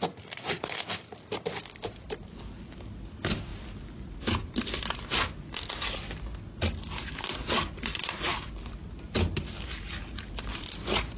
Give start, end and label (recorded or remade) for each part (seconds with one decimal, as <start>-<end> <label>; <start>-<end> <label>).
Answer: 0.0-11.2 recorded